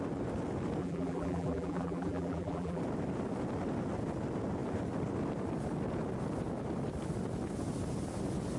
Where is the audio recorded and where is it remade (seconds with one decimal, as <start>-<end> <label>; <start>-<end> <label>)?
0.0-0.8 recorded; 0.8-2.8 remade; 2.8-8.6 recorded